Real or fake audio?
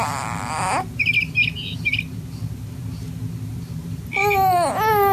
real